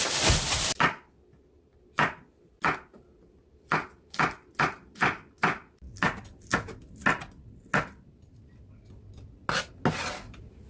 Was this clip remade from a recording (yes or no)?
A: no